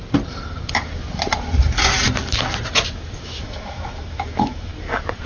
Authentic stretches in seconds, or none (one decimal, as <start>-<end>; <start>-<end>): 0.0-3.2; 4.7-5.3